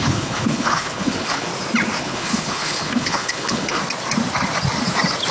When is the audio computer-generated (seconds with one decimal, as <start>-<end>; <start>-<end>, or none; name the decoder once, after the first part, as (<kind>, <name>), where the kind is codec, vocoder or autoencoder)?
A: 0.0-1.5 (codec, HILCodec); 2.0-3.8